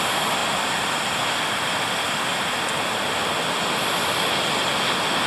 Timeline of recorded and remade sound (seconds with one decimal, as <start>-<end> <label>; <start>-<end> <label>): 0.0-5.3 recorded